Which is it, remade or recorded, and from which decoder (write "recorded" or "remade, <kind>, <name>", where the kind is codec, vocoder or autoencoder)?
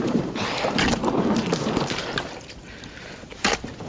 remade, vocoder, BigVGAN v2